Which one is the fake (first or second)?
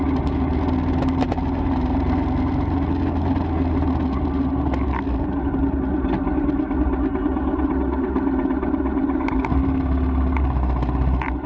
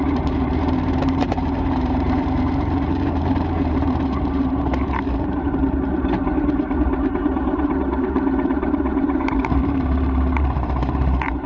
second